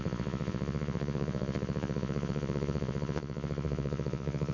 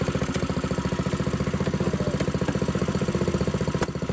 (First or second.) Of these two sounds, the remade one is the first